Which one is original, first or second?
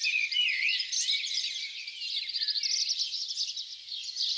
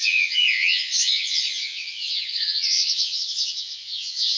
first